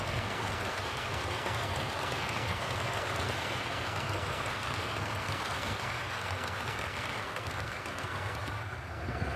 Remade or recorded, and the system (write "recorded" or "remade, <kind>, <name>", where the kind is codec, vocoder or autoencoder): remade, codec, SNAC